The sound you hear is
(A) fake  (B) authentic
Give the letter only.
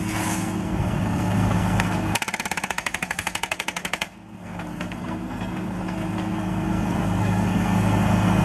A